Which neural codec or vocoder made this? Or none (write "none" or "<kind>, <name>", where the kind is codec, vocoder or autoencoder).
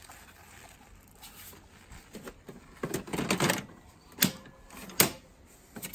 none